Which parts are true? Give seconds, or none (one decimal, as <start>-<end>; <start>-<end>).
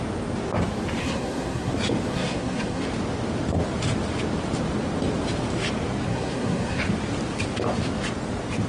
0.0-1.0; 1.7-2.1; 2.8-6.1; 6.8-8.7